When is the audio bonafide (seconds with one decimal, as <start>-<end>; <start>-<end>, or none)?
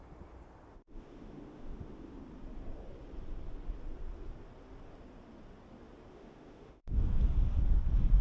0.0-0.7; 2.1-6.1; 7.2-8.2